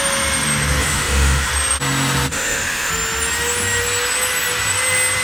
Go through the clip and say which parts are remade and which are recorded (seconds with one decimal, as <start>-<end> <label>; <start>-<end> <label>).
0.0-0.8 recorded; 0.8-1.5 remade; 1.5-2.3 recorded; 2.3-2.9 remade; 2.9-5.2 recorded